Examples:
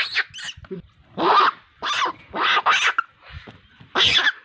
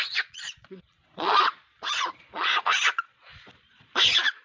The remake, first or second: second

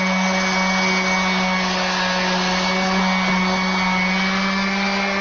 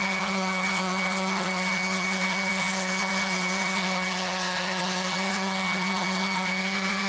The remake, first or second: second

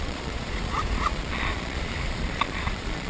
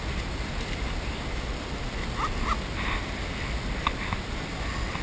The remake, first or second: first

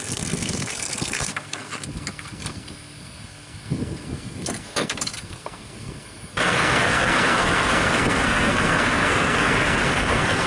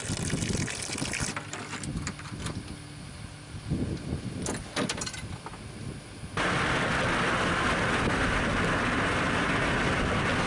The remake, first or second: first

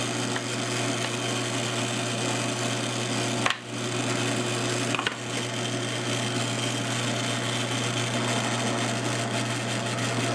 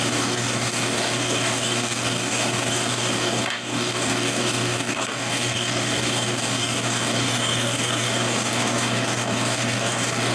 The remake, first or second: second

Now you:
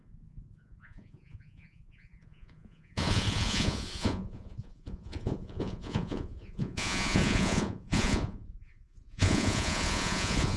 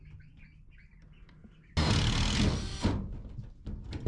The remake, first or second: first